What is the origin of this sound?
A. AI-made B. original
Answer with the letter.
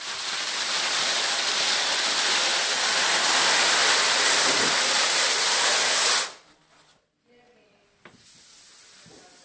B